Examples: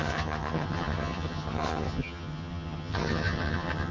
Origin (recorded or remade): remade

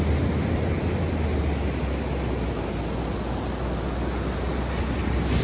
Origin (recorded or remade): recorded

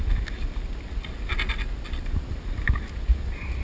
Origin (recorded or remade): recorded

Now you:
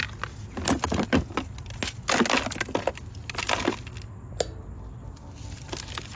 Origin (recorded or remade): recorded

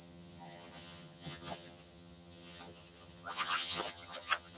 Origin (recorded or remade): remade